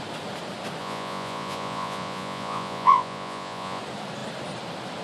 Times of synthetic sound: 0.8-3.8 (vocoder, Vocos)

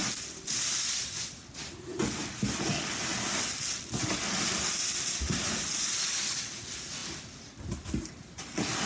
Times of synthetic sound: 0.0-1.4 (vocoder, BigVGAN v2)

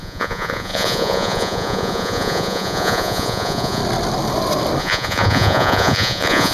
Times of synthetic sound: 0.0-3.8 (vocoder, Vocos); 4.8-6.5

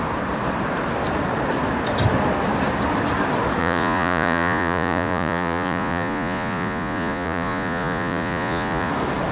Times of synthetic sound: 3.6-8.9 (vocoder, Vocos)

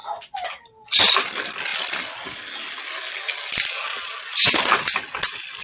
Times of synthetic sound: none

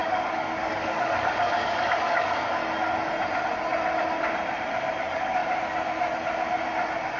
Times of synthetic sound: 0.0-2.6 (codec, DAC); 5.0-5.4

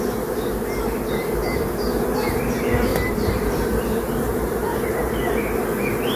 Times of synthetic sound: 2.9-5.1 (vocoder, BigVGAN v2)

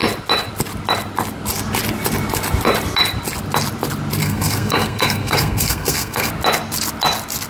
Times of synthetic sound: 4.2-6.3 (codec, SNAC)